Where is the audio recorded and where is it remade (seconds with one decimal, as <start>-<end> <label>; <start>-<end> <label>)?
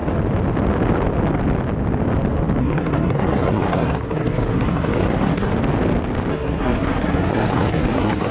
0.0-2.6 recorded; 2.6-5.5 remade; 5.5-6.3 recorded; 6.3-8.3 remade